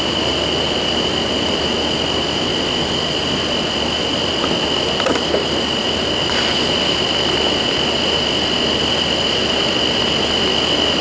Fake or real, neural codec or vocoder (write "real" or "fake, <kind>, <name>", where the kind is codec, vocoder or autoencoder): real